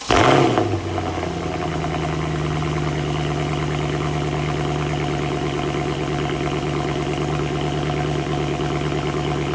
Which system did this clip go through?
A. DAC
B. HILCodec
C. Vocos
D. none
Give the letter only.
D